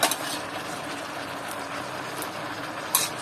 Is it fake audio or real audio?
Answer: real